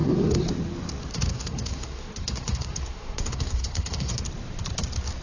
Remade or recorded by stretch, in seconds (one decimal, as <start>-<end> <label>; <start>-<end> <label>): 0.0-0.5 remade; 0.5-1.1 recorded; 1.1-4.2 remade; 4.2-5.2 recorded